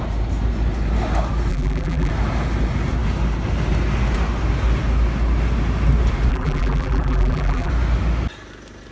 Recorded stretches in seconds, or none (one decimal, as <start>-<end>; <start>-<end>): 0.0-1.5; 2.1-6.3; 7.7-8.9